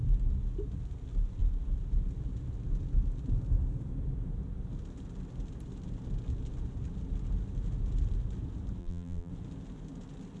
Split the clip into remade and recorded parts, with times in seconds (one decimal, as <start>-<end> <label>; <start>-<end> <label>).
0.0-8.8 recorded; 8.8-9.3 remade; 9.3-10.4 recorded